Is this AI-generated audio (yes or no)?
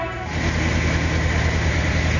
no